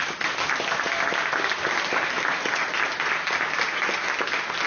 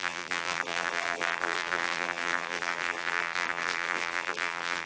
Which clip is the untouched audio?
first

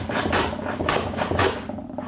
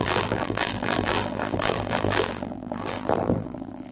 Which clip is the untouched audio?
first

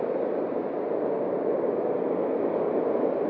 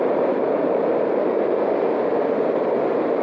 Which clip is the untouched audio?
first